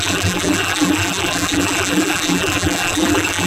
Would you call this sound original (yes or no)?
no